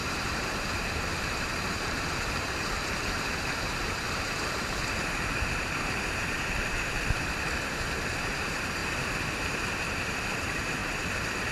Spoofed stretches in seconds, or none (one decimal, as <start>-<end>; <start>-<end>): 0.0-11.5